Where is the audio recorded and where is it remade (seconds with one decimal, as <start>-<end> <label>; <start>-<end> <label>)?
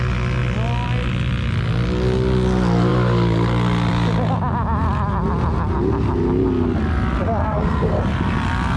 0.0-7.4 recorded; 7.4-8.0 remade; 8.0-8.8 recorded